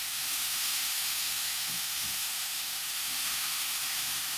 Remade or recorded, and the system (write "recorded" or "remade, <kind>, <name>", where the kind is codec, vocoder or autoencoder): remade, autoencoder, DAC-VAE